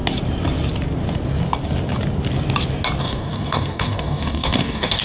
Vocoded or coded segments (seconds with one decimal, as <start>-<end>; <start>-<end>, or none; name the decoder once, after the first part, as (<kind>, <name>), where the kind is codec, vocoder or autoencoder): 3.0-5.0 (codec, DAC)